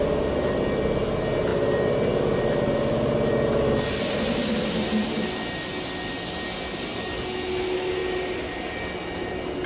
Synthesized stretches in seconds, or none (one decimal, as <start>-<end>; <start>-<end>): none